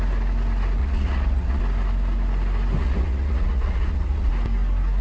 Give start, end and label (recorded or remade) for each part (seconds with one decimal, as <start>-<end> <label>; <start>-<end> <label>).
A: 0.0-0.8 recorded; 0.8-1.6 remade; 1.6-2.8 recorded; 2.8-4.3 remade; 4.3-5.0 recorded